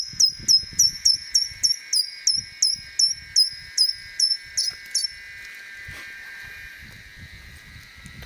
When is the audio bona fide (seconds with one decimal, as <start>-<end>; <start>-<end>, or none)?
0.0-0.7; 1.8-3.6; 4.5-8.3